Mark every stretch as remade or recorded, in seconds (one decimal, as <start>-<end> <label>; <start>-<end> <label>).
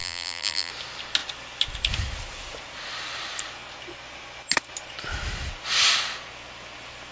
0.0-0.7 remade; 0.7-7.1 recorded